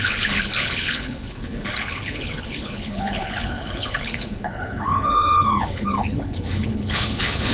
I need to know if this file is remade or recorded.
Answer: remade